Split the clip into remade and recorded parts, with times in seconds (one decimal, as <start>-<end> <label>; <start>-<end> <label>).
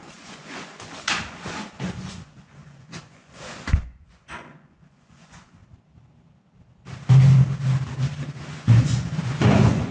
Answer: 0.0-5.6 remade; 5.6-8.5 recorded; 8.5-9.9 remade